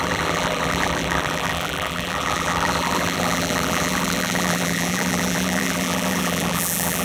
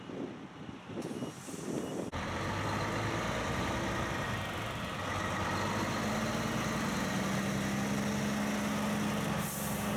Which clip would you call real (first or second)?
second